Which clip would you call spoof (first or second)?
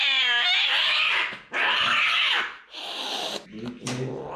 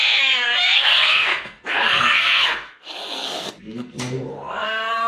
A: second